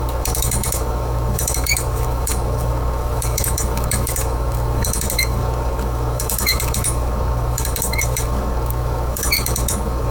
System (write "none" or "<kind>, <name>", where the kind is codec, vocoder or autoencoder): codec, DAC